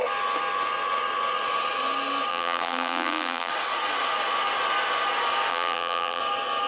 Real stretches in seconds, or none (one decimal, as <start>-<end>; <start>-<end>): 0.0-2.3; 3.5-5.5; 6.2-6.7